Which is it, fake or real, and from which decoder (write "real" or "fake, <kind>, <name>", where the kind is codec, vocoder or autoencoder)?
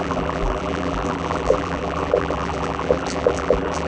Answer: fake, vocoder, BigVGAN v2